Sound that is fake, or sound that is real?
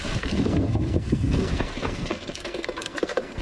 fake